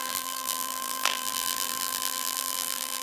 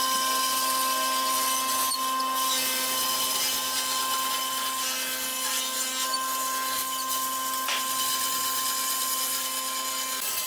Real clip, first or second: second